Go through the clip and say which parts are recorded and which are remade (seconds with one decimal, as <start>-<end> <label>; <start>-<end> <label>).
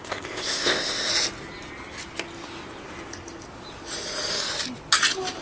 0.0-1.1 remade; 1.1-5.4 recorded